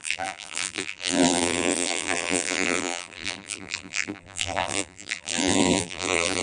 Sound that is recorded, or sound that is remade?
remade